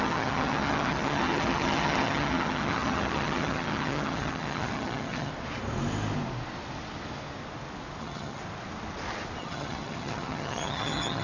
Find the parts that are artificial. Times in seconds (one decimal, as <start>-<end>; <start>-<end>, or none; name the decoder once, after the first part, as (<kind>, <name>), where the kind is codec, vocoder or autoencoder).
0.0-5.3 (vocoder, HiFi-GAN); 8.0-8.4; 9.4-11.2